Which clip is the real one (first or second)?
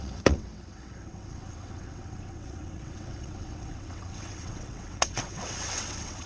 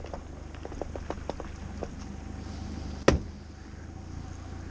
second